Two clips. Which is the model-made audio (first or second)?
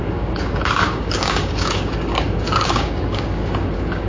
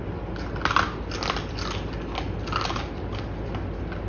first